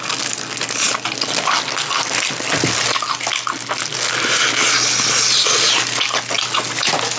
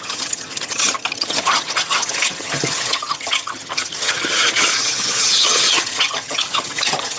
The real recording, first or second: first